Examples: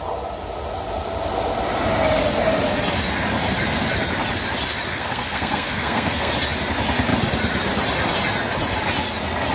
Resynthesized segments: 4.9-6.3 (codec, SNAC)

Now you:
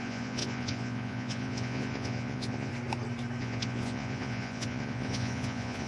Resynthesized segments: 0.0-2.7 (vocoder, Vocos); 3.4-5.9